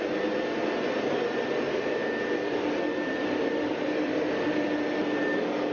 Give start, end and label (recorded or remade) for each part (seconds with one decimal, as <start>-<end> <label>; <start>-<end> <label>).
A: 0.0-5.7 recorded